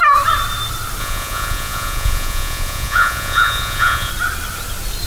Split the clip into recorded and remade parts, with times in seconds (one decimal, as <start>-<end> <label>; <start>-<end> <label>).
0.0-1.0 recorded; 1.0-4.1 remade; 4.1-5.1 recorded